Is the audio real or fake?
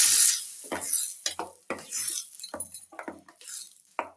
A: real